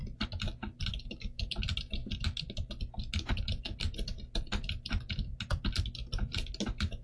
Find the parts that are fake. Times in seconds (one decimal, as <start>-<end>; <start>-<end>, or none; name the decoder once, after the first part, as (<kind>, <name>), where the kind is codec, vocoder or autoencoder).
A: 0.9-1.5 (autoencoder, DAC-VAE)